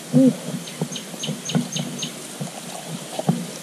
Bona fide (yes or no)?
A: yes